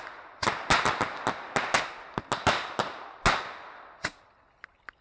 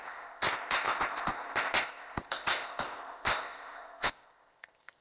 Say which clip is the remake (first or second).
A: second